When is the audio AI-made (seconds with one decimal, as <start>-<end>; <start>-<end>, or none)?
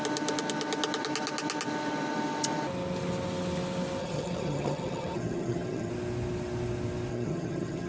4.0-5.9; 7.1-7.9